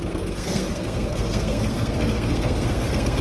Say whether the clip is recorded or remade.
remade